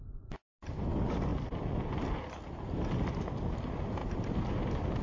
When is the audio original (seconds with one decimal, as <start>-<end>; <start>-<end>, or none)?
0.0-4.0

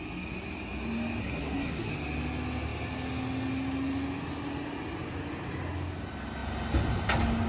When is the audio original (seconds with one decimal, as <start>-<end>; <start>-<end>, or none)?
0.0-1.2; 1.9-7.5

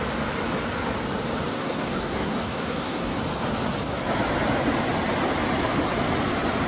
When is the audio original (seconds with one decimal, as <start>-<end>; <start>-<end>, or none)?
0.0-1.5; 3.2-6.7

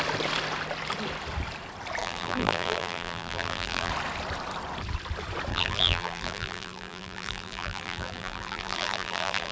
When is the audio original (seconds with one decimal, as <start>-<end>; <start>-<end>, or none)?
0.0-2.0; 3.9-5.5

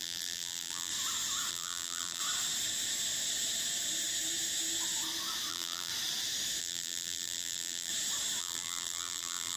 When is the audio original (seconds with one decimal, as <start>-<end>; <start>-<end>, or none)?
0.9-1.5; 2.2-5.5; 5.9-6.6; 7.9-8.4

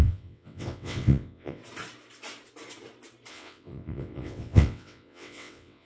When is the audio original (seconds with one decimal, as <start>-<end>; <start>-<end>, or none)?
1.6-3.3

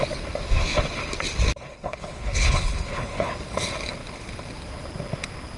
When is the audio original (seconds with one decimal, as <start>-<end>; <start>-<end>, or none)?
0.0-1.7; 3.3-5.6

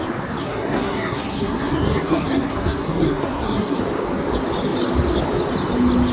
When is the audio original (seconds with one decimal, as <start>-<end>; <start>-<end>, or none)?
0.0-0.4; 3.8-6.1